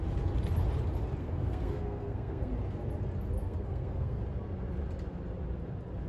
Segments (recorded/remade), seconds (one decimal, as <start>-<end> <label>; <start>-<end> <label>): 0.0-1.2 recorded; 1.2-2.5 remade; 2.5-3.4 recorded; 3.4-4.2 remade; 4.2-6.1 recorded